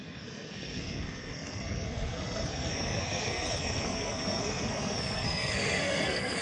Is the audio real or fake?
fake